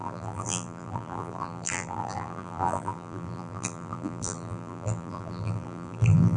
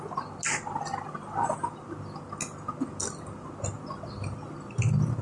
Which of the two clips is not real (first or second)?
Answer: first